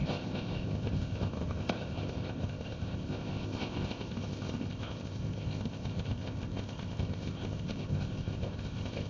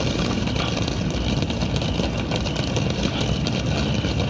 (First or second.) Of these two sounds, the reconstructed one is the first